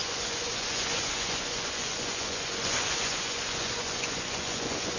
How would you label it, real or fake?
fake